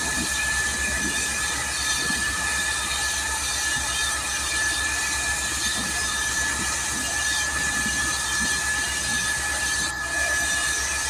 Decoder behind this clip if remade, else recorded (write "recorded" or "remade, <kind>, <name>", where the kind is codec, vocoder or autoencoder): recorded